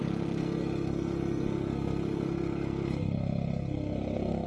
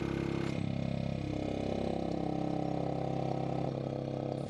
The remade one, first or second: first